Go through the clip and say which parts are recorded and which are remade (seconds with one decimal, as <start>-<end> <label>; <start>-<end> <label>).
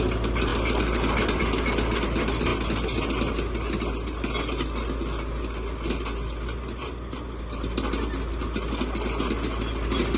0.0-10.2 recorded